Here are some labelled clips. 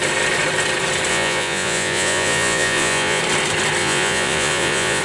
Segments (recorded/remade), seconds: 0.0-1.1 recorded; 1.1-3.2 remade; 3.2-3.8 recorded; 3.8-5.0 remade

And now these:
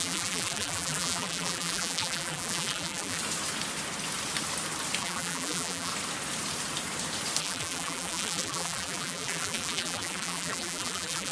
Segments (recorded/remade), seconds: 0.0-3.2 remade; 3.2-5.0 recorded; 5.0-5.9 remade; 5.9-7.4 recorded; 7.4-11.3 remade

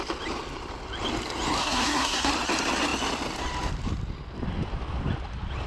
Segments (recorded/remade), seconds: 0.0-1.6 recorded; 1.6-2.3 remade; 2.3-5.7 recorded

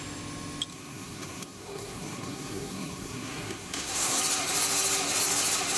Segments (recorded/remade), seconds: 0.0-0.7 recorded; 0.7-4.2 remade; 4.2-5.8 recorded